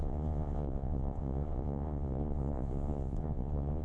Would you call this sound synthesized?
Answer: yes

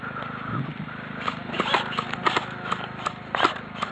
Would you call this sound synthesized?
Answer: no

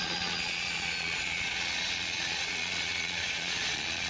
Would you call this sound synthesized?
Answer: yes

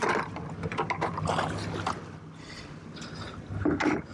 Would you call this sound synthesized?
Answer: no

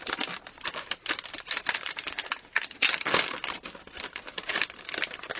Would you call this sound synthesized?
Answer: no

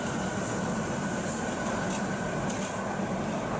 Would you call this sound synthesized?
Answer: no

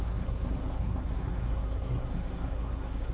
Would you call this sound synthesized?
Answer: yes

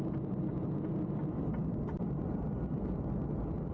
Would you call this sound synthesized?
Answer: no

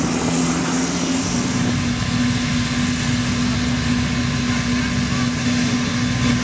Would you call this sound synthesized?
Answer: no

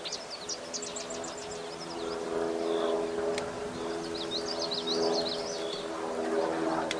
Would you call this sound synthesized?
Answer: no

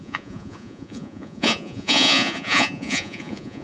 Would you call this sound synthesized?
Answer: yes